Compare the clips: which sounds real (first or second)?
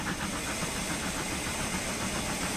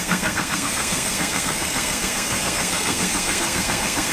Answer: first